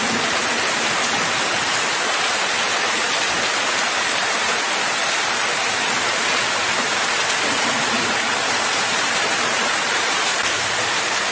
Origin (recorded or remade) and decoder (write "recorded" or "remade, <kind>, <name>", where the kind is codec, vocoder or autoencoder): remade, vocoder, BigVGAN v2